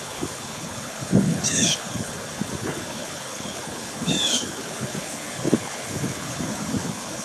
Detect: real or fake fake